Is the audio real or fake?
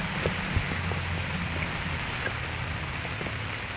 real